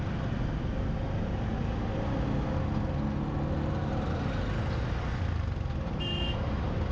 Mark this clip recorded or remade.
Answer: recorded